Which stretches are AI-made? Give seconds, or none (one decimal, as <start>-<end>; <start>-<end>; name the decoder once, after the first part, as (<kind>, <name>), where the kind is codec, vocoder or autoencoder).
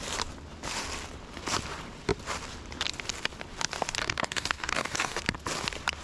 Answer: 4.0-5.2 (codec, DAC)